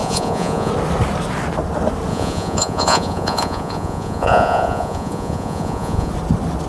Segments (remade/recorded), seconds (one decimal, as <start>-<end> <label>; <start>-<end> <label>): 0.0-0.7 remade; 0.7-2.1 recorded; 2.1-6.1 remade; 6.1-6.7 recorded